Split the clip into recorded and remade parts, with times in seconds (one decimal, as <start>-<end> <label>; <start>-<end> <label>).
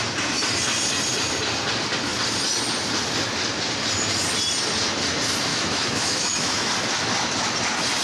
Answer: 0.0-5.5 recorded; 5.5-6.7 remade; 6.7-8.0 recorded